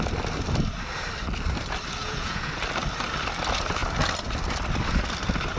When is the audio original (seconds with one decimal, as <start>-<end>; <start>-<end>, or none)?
0.0-2.0; 2.5-5.6